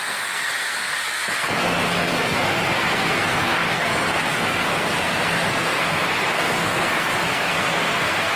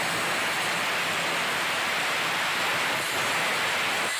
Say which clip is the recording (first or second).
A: second